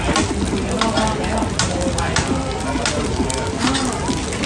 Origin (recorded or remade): recorded